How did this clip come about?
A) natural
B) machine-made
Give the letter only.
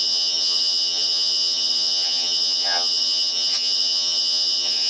B